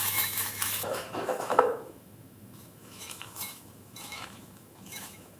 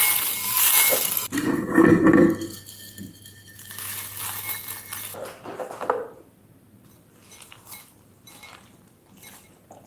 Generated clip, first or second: first